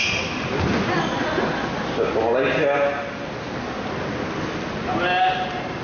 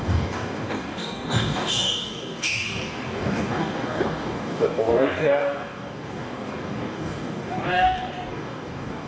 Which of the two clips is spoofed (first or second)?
second